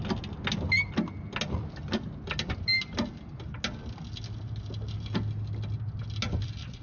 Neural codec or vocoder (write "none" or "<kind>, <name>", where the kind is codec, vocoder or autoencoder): none